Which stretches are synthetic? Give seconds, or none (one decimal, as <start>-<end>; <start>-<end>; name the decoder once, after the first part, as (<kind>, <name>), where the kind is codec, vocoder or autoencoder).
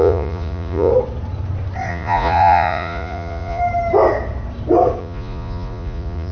0.0-0.9 (vocoder, Vocos); 1.9-3.6; 5.0-6.3